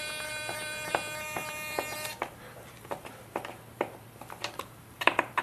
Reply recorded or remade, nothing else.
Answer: remade